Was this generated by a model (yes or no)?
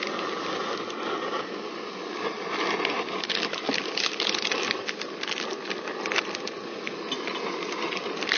no